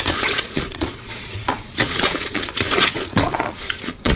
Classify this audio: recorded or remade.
remade